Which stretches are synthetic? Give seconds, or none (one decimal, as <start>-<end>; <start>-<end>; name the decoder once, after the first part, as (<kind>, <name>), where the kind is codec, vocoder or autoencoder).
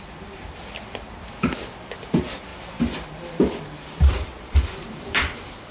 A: 0.0-2.5 (vocoder, BigVGAN v2); 3.3-5.7